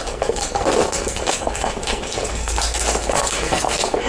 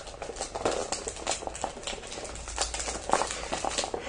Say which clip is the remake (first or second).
first